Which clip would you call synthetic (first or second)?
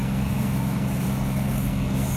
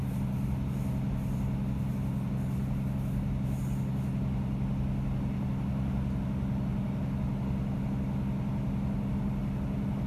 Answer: first